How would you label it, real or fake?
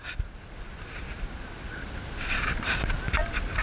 real